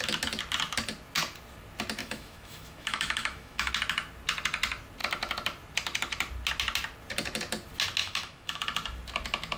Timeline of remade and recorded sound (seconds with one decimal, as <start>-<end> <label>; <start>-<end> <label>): 0.0-2.0 recorded; 2.0-3.7 remade; 3.7-8.0 recorded; 8.0-8.6 remade; 8.6-9.6 recorded